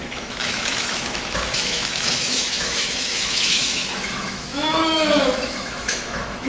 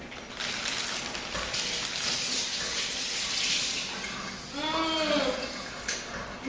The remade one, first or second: first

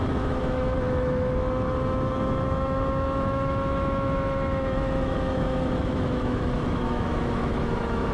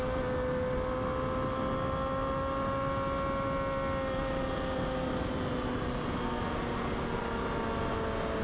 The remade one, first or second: first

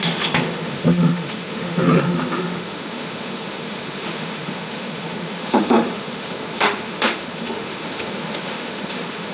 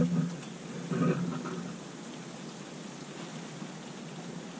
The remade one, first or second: first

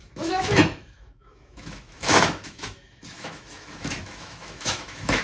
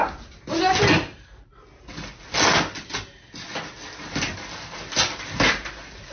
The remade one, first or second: first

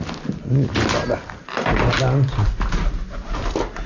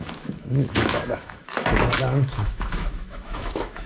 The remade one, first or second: second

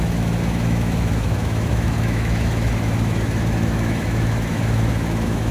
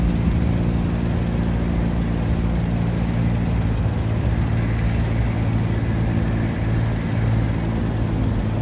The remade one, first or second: first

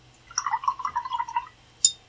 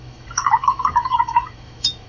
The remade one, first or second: second